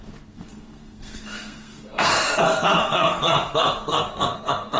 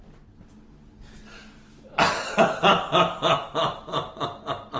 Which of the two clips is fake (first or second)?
first